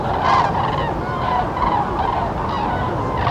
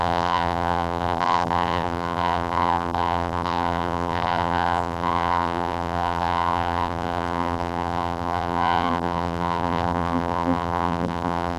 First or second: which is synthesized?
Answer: second